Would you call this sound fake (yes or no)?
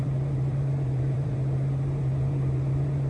yes